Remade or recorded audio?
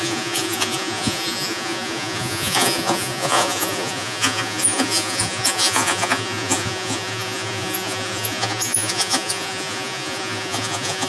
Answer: remade